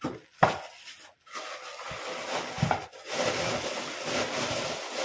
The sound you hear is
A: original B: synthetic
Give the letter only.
A